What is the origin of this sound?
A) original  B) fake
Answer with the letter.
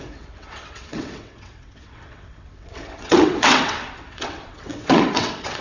B